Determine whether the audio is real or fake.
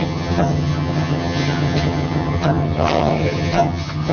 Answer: fake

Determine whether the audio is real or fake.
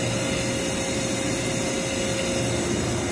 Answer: real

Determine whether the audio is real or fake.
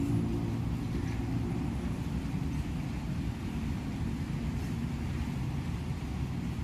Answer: real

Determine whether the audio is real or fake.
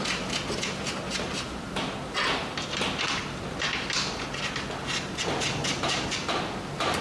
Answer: fake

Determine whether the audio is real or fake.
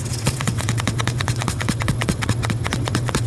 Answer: fake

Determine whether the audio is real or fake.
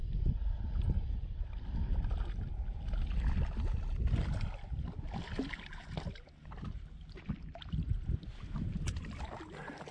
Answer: real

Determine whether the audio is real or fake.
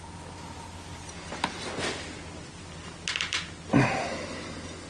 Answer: real